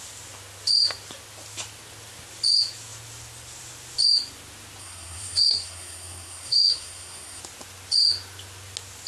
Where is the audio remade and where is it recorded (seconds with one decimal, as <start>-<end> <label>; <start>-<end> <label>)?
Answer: 0.0-4.8 recorded; 4.8-7.4 remade; 7.4-9.1 recorded